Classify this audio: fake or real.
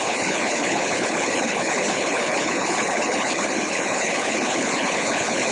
fake